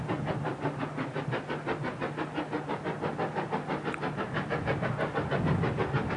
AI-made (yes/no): no